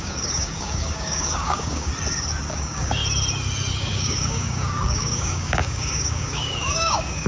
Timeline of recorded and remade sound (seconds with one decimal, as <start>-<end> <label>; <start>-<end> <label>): 0.0-1.9 remade; 1.9-2.5 recorded; 2.5-3.0 remade; 3.0-3.8 recorded; 3.8-7.3 remade

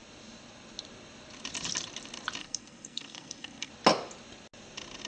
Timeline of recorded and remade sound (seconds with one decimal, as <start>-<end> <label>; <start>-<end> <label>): 0.0-2.4 recorded; 2.4-3.7 remade; 3.7-5.1 recorded

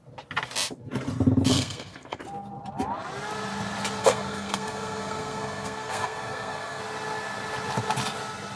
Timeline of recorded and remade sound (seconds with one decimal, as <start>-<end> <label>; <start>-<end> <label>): 0.0-1.5 recorded; 1.5-2.2 remade; 2.2-4.0 recorded; 4.0-6.8 remade; 6.8-8.6 recorded

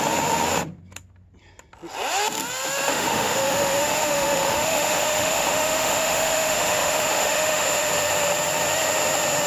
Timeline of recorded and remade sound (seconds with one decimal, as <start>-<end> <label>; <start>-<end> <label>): 0.0-2.9 recorded; 2.9-7.9 remade; 7.9-9.5 recorded

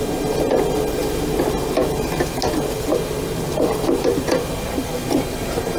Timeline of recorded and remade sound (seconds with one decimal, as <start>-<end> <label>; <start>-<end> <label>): 0.0-5.8 recorded

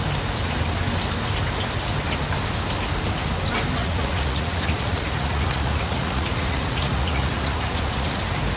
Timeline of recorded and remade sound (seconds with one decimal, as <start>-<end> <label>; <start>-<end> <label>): 0.0-3.8 recorded; 3.8-8.2 remade; 8.2-8.6 recorded